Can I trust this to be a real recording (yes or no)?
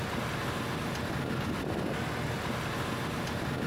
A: yes